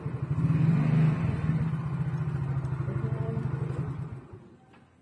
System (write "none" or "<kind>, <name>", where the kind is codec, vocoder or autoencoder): none